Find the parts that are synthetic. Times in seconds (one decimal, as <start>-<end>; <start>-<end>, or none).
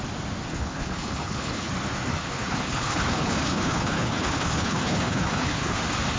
0.5-1.7; 2.1-5.8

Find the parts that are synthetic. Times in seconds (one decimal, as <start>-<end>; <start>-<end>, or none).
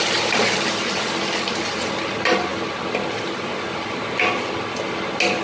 none